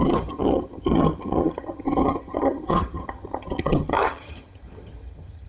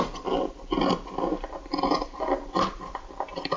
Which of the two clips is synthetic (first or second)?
first